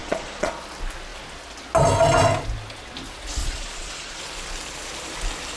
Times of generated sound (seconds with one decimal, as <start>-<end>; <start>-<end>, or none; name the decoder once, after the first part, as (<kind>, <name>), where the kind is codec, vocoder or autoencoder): 0.0-0.5 (vocoder, Vocos); 3.4-4.2